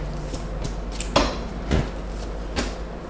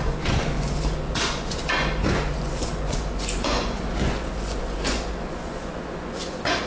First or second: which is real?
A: first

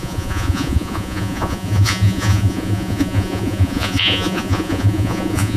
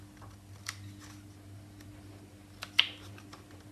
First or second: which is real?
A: second